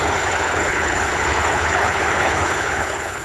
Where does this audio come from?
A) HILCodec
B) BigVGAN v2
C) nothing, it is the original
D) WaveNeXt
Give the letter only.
A